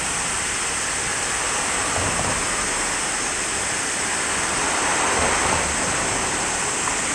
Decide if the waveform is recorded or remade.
recorded